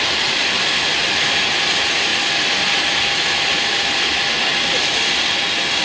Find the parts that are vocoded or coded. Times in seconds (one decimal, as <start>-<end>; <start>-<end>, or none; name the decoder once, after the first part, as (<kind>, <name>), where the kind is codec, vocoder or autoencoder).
none